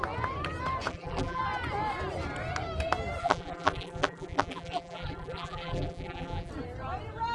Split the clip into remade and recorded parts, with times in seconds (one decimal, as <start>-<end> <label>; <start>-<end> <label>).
0.0-0.9 recorded; 0.9-1.4 remade; 1.4-3.2 recorded; 3.2-6.5 remade; 6.5-7.3 recorded